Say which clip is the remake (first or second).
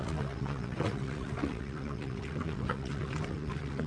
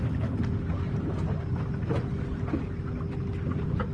first